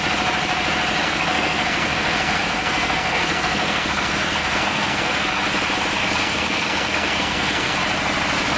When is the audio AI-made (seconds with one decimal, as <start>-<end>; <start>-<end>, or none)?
1.0-5.4; 6.0-7.8